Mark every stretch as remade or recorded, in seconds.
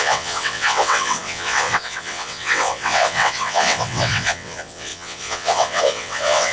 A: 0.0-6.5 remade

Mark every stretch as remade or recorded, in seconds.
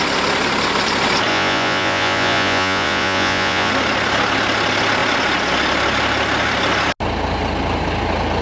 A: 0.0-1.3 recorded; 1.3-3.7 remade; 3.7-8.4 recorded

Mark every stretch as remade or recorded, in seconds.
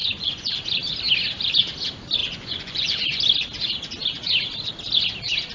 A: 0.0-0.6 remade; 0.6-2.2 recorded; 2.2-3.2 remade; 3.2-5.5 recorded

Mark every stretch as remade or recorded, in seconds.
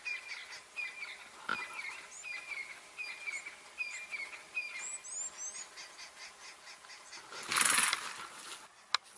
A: 0.0-9.2 recorded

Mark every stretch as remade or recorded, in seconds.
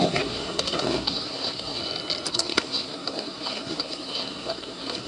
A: 0.0-1.8 remade; 1.8-2.3 recorded; 2.3-5.1 remade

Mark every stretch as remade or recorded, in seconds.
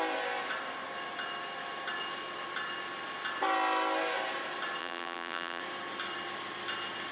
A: 0.0-4.8 recorded; 4.8-5.6 remade; 5.6-7.1 recorded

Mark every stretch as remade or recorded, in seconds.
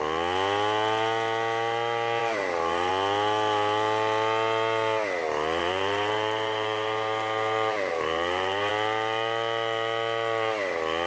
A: 0.0-2.2 recorded; 2.2-2.9 remade; 2.9-5.6 recorded; 5.6-8.7 remade; 8.7-11.1 recorded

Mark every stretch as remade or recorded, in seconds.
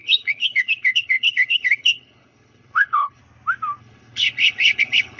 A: 0.0-3.2 remade; 3.2-3.8 recorded; 3.8-5.2 remade